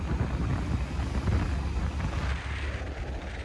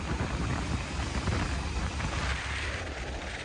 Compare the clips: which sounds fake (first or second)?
second